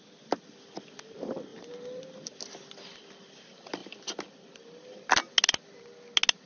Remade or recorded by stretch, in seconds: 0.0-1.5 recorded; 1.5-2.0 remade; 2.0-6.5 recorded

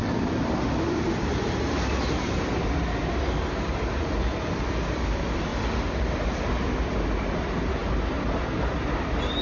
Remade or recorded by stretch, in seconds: 0.0-9.4 recorded

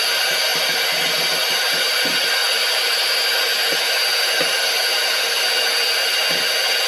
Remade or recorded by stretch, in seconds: 0.0-6.9 recorded

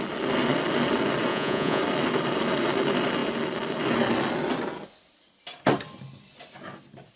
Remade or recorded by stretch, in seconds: 0.0-1.3 recorded; 1.3-1.8 remade; 1.8-7.2 recorded

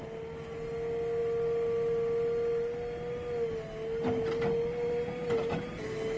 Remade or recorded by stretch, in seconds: 0.0-6.2 recorded